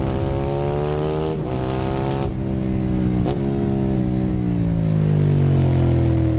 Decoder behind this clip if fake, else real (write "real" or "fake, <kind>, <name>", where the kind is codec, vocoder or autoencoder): real